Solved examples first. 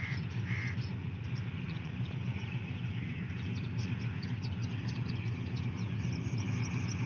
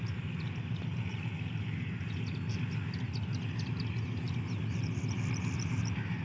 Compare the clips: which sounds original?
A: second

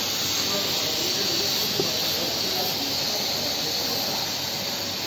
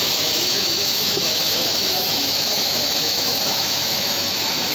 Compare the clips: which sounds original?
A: first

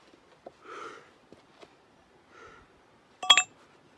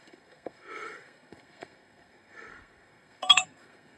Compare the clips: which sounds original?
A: first